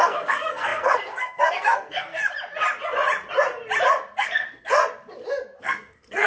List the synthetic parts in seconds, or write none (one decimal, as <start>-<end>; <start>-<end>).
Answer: 0.0-2.2; 4.2-4.8; 5.6-6.3